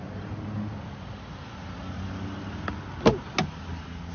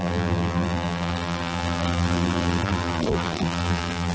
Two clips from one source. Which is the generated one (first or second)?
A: second